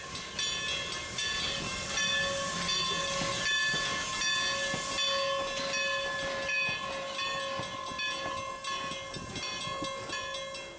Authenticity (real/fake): real